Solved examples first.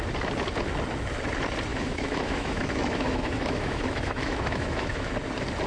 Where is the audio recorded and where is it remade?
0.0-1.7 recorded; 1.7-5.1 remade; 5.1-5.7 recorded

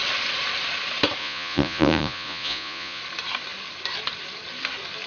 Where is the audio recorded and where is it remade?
0.0-1.2 recorded; 1.2-3.0 remade; 3.0-5.1 recorded

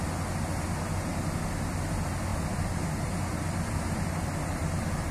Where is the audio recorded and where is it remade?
0.0-2.3 recorded; 2.3-5.1 remade

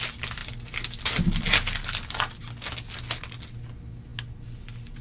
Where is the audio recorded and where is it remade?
0.0-5.0 recorded

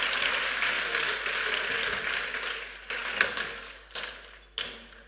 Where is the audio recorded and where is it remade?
0.0-5.1 recorded